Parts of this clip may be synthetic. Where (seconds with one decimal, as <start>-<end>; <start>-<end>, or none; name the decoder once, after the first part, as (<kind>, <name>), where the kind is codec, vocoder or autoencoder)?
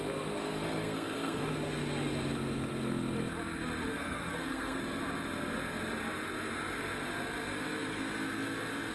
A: 0.4-1.4 (codec, SNAC); 3.9-4.8